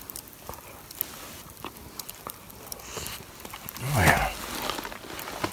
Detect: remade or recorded recorded